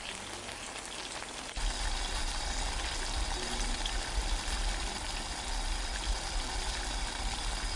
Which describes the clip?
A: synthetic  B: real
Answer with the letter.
B